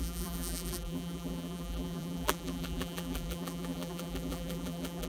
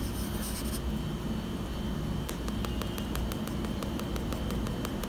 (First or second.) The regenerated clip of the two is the first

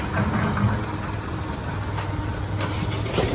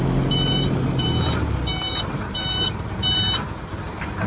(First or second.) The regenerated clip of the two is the second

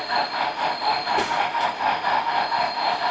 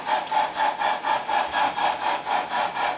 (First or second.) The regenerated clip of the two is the first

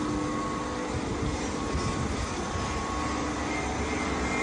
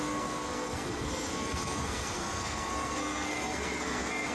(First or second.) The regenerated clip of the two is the second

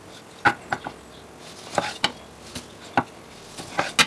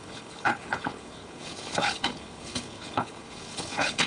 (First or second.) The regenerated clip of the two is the second